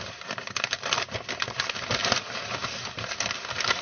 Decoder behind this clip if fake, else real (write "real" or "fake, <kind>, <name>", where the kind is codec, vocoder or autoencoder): real